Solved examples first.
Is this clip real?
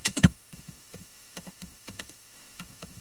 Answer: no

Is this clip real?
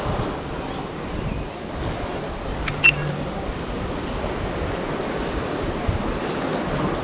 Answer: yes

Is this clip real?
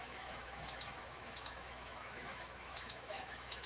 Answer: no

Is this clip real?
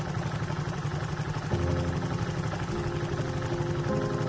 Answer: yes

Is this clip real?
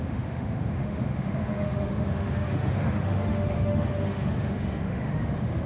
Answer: no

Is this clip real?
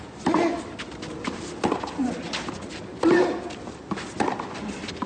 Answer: yes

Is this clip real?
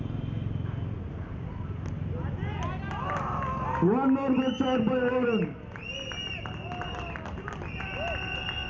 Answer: yes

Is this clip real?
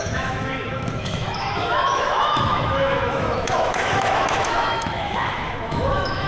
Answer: no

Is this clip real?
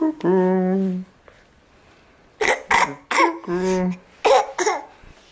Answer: yes